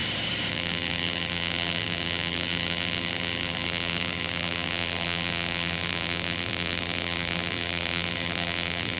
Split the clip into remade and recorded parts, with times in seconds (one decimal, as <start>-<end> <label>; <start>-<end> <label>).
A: 0.0-0.5 recorded; 0.5-9.0 remade